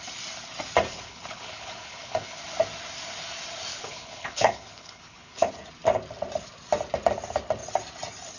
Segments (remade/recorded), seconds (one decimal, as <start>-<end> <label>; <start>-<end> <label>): 0.0-0.9 recorded; 0.9-2.4 remade; 2.4-3.7 recorded; 3.7-5.5 remade; 5.5-8.4 recorded